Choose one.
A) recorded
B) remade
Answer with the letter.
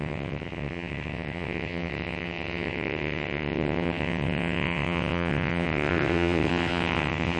B